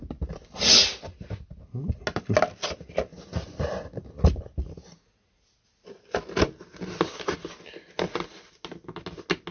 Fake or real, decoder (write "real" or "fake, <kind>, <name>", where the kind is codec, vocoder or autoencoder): real